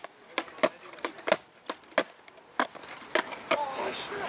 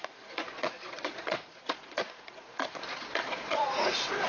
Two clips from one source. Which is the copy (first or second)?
second